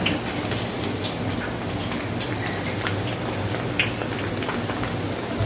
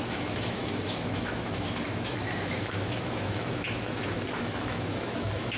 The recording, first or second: first